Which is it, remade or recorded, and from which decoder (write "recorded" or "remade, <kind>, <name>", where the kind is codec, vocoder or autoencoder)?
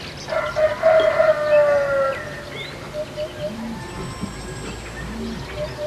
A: recorded